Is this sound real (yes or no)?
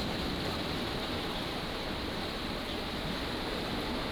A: yes